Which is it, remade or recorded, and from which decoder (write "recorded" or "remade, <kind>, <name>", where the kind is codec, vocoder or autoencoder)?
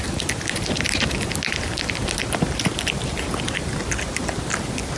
recorded